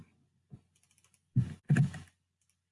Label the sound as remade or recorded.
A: recorded